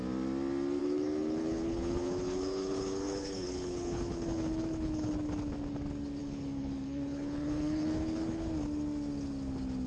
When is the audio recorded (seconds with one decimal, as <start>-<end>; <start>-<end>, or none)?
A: 0.0-0.8; 5.1-6.2; 8.5-9.9